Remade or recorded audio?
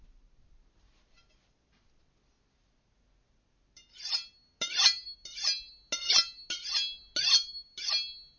recorded